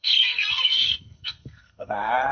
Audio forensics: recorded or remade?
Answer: remade